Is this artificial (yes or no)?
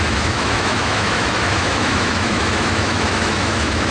yes